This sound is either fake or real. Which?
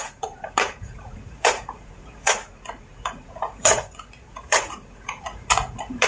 fake